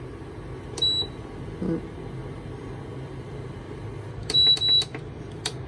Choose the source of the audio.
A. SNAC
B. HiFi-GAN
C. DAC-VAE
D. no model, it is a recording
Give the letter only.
D